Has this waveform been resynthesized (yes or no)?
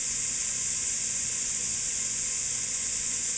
yes